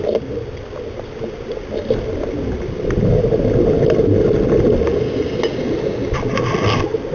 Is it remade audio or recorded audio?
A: recorded